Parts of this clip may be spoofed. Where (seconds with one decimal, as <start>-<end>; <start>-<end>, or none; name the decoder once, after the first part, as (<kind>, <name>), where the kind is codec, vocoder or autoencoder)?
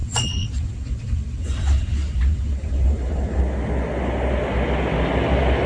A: 0.0-3.4 (vocoder, WaveNeXt)